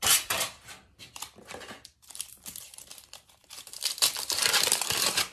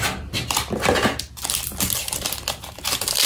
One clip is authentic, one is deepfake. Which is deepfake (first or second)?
first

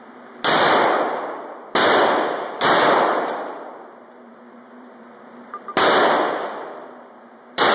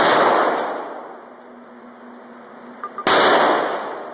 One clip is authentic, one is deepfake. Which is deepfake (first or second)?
first